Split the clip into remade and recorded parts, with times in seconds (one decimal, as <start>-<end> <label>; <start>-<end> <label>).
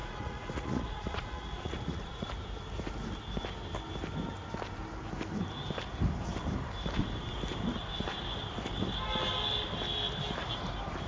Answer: 0.0-2.3 remade; 2.3-11.1 recorded